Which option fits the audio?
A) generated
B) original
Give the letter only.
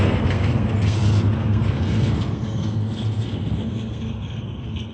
A